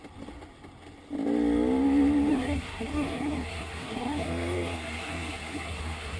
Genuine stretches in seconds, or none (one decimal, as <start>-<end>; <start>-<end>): 0.0-2.3